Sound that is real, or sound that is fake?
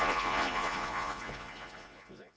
fake